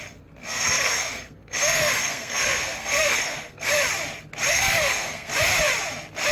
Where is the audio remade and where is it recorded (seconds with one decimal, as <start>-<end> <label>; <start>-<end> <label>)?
0.0-0.4 recorded; 0.4-3.7 remade; 3.7-4.5 recorded; 4.5-5.3 remade; 5.3-6.3 recorded